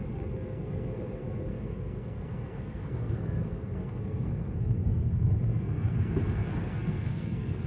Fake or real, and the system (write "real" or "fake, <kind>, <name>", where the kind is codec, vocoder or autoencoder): fake, codec, SNAC